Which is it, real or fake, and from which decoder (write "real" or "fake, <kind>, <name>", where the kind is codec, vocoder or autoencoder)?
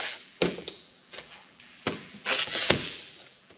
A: fake, vocoder, BigVGAN v2